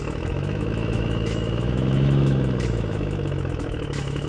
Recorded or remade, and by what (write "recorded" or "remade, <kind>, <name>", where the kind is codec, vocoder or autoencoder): remade, autoencoder, DAC-VAE